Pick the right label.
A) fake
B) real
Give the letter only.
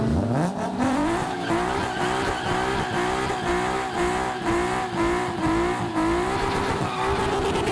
B